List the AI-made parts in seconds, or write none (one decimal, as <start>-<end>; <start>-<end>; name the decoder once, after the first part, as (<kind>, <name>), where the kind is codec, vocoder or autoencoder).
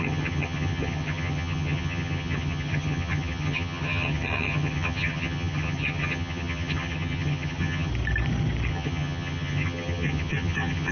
0.0-7.9 (vocoder, HiFi-GAN); 8.7-10.9